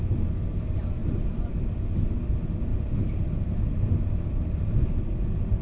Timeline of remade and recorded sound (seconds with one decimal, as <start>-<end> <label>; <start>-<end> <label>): 0.0-1.0 recorded; 1.0-1.5 remade; 1.5-2.7 recorded; 2.7-4.8 remade; 4.8-5.6 recorded